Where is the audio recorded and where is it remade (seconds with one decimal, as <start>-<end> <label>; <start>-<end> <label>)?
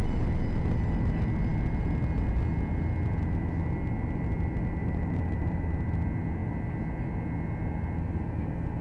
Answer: 0.0-4.8 recorded; 4.8-5.6 remade; 5.6-8.8 recorded